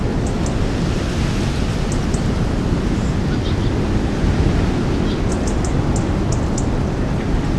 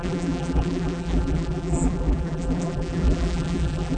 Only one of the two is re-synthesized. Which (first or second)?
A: second